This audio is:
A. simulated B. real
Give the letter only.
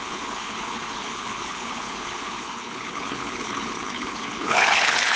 A